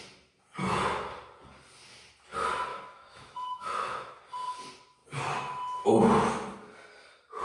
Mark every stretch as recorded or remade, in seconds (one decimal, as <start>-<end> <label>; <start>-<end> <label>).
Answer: 0.0-2.7 recorded; 2.7-4.2 remade; 4.2-7.4 recorded